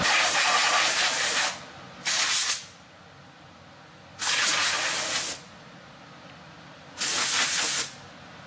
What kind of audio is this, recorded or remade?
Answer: recorded